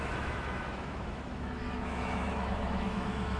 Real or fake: fake